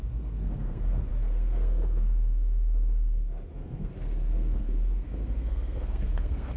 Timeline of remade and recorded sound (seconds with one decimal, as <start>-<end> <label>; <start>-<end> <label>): 0.0-6.6 remade